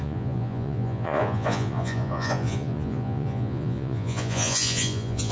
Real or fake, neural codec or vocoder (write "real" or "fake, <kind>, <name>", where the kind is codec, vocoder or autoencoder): fake, vocoder, Vocos